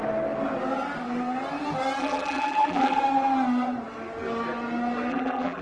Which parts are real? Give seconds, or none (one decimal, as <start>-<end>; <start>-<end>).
0.0-2.0; 3.0-5.1